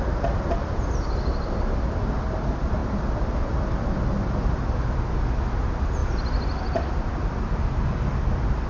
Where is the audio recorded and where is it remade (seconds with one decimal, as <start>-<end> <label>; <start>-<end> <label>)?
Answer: 0.0-8.7 recorded